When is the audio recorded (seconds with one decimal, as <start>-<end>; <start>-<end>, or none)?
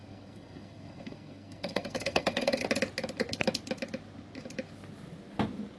2.6-5.8